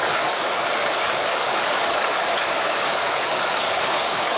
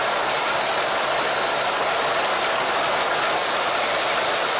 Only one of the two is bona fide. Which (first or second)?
second